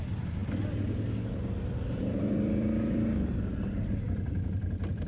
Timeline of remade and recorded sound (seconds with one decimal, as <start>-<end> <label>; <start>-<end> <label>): 0.0-0.4 remade; 0.4-1.6 recorded; 1.6-5.1 remade